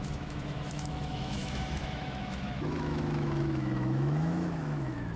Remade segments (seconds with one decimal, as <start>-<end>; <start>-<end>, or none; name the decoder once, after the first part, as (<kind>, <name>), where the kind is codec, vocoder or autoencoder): 0.0-5.2 (autoencoder, DAC-VAE)